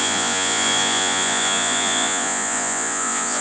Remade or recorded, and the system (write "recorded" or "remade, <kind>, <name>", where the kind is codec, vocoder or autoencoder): remade, vocoder, Vocos